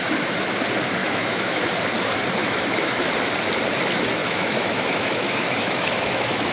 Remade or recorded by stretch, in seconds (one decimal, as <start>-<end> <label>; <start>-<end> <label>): 0.0-1.0 recorded; 1.0-1.7 remade; 1.7-2.4 recorded; 2.4-3.1 remade; 3.1-4.2 recorded; 4.2-6.5 remade

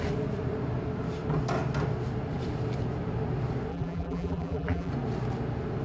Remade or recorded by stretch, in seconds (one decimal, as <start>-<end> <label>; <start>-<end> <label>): 0.0-3.7 recorded; 3.7-4.9 remade; 4.9-5.8 recorded

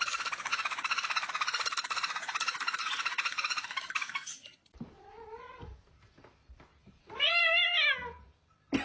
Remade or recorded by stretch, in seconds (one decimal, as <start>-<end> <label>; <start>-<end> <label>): 0.0-4.6 recorded; 4.6-5.9 remade; 5.9-6.7 recorded; 6.7-7.3 remade; 7.3-8.8 recorded

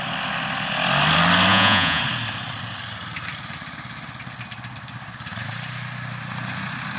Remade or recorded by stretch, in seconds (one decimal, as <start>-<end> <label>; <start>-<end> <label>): 0.0-1.5 recorded; 1.5-2.0 remade; 2.0-7.0 recorded

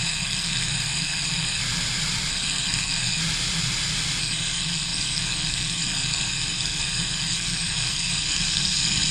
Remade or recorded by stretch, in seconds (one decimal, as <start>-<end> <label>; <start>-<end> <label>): 0.0-1.6 remade; 1.6-2.3 recorded; 2.3-3.2 remade; 3.2-4.2 recorded; 4.2-9.1 remade

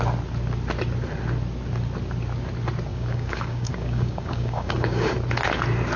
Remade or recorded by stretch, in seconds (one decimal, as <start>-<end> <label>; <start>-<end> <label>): 0.0-2.9 recorded; 2.9-5.1 remade; 5.1-6.0 recorded

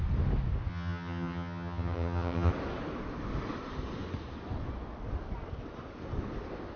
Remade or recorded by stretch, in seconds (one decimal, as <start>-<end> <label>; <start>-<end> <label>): 0.0-0.7 recorded; 0.7-2.5 remade; 2.5-6.8 recorded